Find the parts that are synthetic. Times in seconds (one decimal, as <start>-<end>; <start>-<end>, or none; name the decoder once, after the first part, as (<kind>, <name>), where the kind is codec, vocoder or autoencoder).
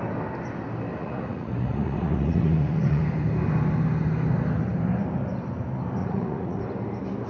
1.0-3.0 (vocoder, Vocos); 6.0-6.6